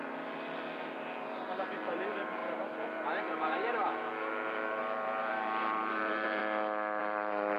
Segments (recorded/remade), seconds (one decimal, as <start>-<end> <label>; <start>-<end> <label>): 0.0-6.4 remade; 6.4-7.0 recorded; 7.0-7.6 remade